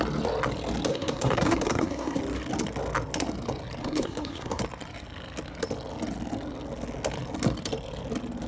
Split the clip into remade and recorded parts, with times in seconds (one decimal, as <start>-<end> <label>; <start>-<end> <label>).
0.0-0.9 recorded; 0.9-2.2 remade; 2.2-3.8 recorded; 3.8-4.6 remade; 4.6-8.5 recorded